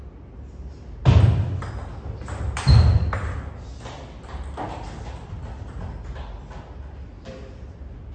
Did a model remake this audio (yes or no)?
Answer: no